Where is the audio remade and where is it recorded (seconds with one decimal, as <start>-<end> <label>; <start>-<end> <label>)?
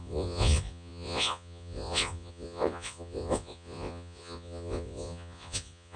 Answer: 0.0-6.0 remade